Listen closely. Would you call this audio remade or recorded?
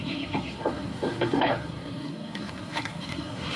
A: remade